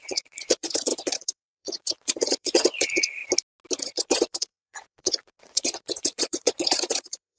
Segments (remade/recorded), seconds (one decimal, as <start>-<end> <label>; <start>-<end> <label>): 0.0-3.2 remade; 3.2-3.8 recorded; 3.8-7.4 remade